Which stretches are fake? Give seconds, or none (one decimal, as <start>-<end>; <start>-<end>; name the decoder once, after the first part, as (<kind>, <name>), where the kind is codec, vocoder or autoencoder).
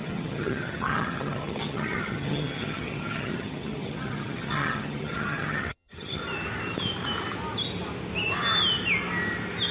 0.0-6.2 (vocoder, HiFi-GAN)